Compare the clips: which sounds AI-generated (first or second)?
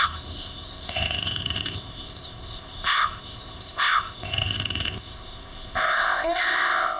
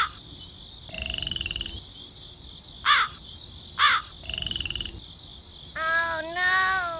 first